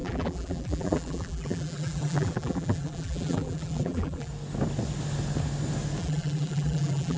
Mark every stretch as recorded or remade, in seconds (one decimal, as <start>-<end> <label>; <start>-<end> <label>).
0.0-4.3 remade; 4.3-6.0 recorded; 6.0-7.2 remade